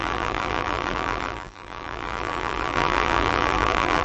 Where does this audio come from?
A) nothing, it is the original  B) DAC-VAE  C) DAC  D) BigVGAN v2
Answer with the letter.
D